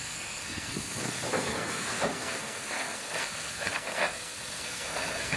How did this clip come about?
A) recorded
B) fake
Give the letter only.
B